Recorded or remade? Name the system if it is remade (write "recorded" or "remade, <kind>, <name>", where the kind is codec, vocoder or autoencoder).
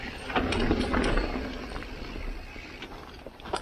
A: recorded